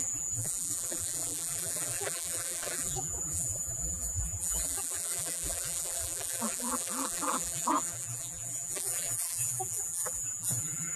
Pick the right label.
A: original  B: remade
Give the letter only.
B